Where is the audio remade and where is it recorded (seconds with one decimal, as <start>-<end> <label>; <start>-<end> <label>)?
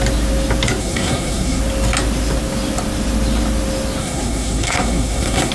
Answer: 0.0-0.8 recorded; 0.8-1.6 remade; 1.6-4.0 recorded; 4.0-5.5 remade